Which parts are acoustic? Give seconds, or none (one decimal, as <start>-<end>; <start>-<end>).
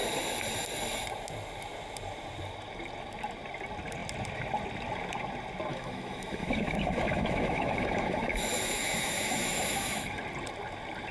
0.0-5.7; 10.2-11.1